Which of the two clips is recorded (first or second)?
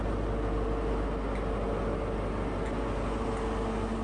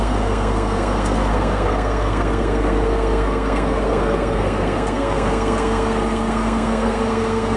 first